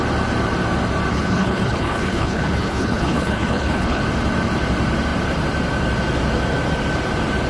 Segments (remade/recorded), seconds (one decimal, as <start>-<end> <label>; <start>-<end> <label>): 0.0-1.1 recorded; 1.1-4.0 remade; 4.0-7.5 recorded